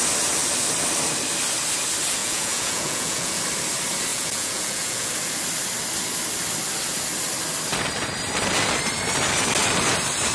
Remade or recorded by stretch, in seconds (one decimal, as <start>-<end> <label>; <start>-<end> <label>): 0.0-2.2 recorded; 2.2-3.4 remade; 3.4-4.1 recorded; 4.1-5.1 remade; 5.1-10.3 recorded